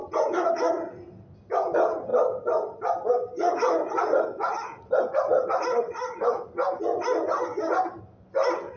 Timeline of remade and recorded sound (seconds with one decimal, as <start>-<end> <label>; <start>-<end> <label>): 0.0-8.8 recorded